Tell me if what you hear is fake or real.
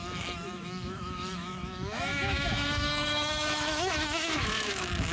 fake